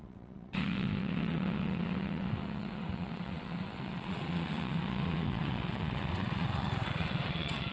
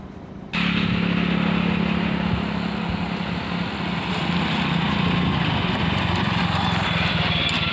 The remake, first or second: first